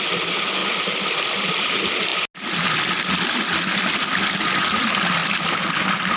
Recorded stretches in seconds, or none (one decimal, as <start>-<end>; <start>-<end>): 0.0-6.2